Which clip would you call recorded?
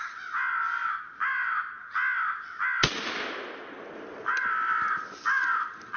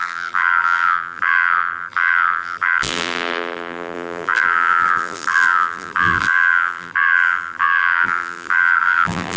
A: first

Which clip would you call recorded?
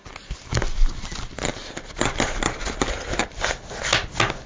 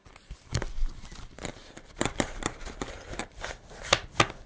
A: first